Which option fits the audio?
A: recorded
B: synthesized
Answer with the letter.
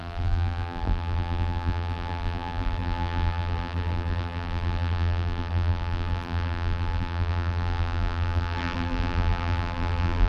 B